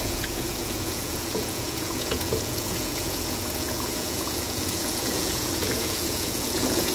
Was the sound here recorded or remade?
remade